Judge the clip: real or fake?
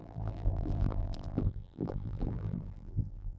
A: fake